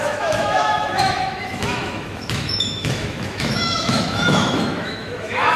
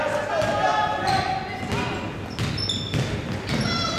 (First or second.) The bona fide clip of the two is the second